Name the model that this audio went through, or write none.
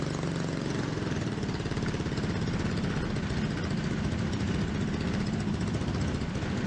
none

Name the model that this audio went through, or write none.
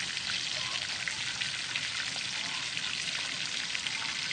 none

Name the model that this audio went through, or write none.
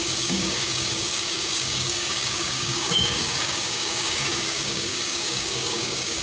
codec, DAC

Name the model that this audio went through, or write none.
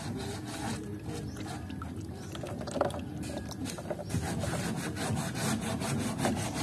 none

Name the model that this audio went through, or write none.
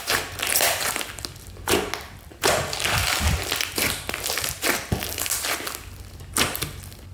none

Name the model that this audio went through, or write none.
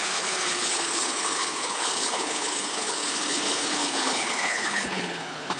codec, HILCodec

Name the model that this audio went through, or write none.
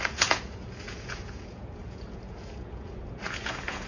vocoder, Vocos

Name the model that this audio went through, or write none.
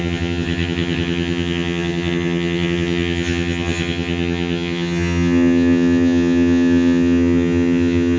vocoder, HiFi-GAN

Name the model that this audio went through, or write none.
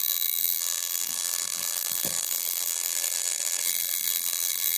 vocoder, BigVGAN v2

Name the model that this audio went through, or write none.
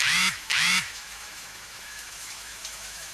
autoencoder, DAC-VAE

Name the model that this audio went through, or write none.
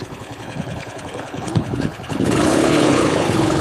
codec, HILCodec